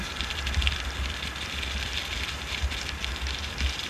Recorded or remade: recorded